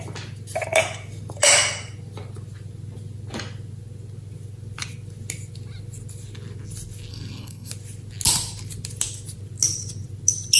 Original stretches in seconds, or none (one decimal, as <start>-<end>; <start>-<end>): 0.0-7.1; 7.7-10.6